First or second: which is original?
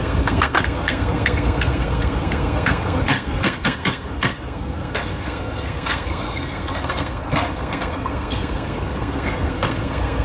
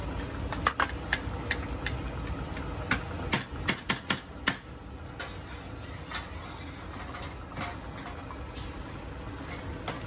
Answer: second